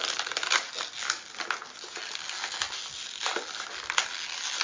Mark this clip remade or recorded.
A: recorded